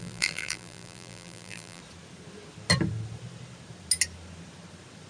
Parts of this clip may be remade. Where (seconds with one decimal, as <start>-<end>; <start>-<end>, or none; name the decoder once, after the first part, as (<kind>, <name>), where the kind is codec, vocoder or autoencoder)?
0.0-1.8 (vocoder, BigVGAN v2)